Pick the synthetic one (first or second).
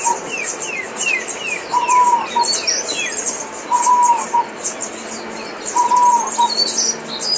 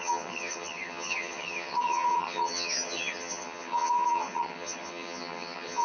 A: second